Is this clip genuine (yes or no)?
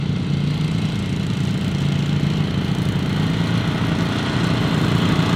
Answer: yes